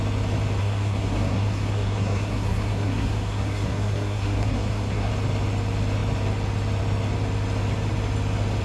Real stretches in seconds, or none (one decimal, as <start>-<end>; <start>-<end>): 0.0-0.6; 5.1-8.6

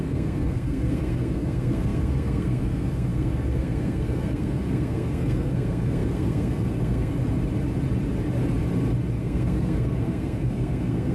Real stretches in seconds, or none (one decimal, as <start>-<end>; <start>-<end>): 7.2-9.2

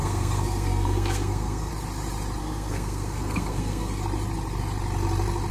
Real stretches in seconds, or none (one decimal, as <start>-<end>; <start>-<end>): 1.7-2.4; 4.0-5.5

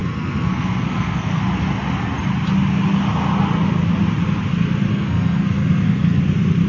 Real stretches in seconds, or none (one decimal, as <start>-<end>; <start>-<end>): 1.4-4.9; 6.2-6.7

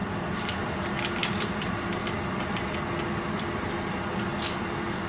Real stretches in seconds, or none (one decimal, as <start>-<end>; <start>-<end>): 0.0-5.1

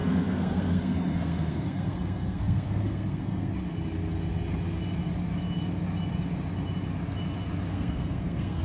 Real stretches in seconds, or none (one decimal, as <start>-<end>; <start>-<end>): 3.5-7.7

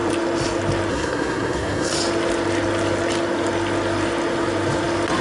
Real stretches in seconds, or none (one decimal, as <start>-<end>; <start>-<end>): 0.0-0.9; 1.9-5.2

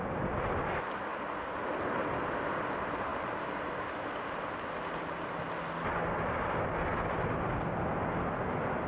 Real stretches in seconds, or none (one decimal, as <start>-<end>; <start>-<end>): 0.0-8.9